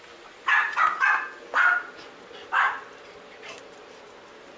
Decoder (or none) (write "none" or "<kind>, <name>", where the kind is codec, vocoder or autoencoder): none